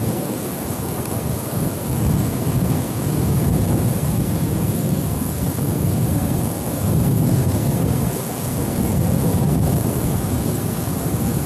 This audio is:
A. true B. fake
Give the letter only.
B